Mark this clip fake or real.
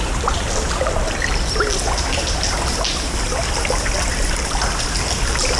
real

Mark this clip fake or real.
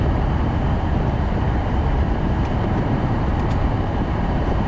fake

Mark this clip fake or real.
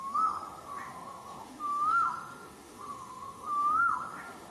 fake